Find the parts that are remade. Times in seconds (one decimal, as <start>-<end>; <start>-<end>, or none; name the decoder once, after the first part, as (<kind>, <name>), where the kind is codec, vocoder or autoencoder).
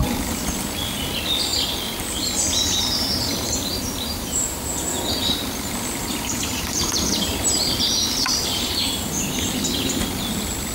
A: 3.7-8.4 (vocoder, BigVGAN v2)